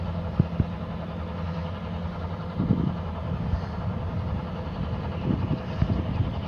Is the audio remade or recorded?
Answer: recorded